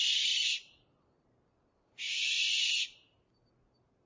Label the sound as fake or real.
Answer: real